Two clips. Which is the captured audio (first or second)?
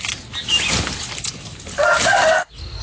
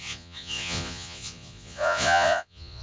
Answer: first